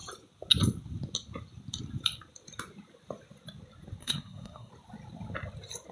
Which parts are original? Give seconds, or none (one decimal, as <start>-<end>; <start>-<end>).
0.0-4.0; 4.7-5.9